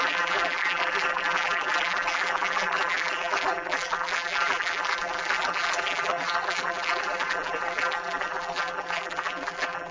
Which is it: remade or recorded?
remade